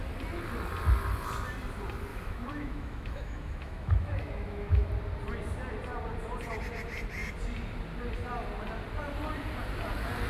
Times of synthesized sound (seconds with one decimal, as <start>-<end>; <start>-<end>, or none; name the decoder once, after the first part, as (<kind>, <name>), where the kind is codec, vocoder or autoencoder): 2.1-4.9 (autoencoder, DAC-VAE)